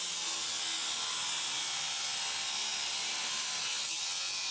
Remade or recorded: recorded